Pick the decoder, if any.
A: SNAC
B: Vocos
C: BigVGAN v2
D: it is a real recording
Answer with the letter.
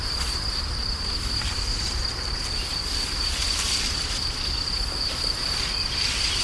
D